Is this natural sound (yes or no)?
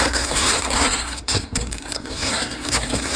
no